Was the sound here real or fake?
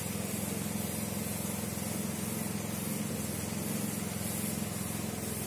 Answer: real